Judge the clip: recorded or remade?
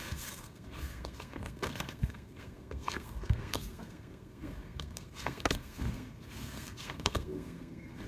remade